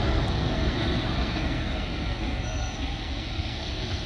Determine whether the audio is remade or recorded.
remade